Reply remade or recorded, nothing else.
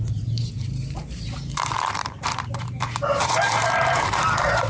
remade